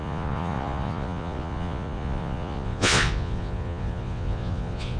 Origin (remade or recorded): remade